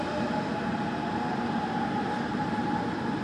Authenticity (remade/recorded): recorded